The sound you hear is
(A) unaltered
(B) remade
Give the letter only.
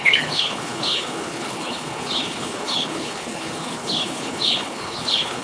B